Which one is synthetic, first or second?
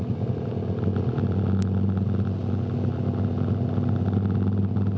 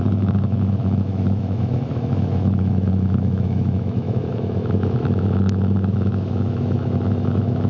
second